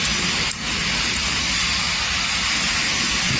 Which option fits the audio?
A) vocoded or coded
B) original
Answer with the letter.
B